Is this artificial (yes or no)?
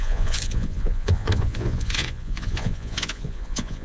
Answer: yes